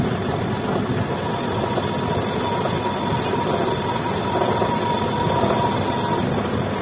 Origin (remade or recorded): recorded